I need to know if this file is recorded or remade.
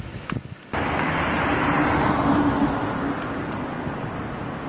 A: recorded